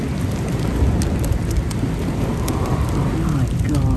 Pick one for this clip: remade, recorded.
recorded